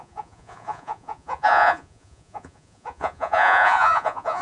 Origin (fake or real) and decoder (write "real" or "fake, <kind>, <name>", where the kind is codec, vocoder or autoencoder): fake, vocoder, Vocos